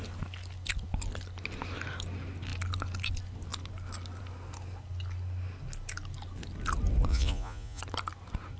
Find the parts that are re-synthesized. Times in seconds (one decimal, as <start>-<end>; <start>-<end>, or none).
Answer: 7.1-7.8